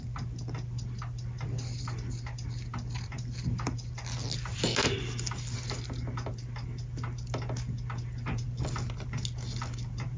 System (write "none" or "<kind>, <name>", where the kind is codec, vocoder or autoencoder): none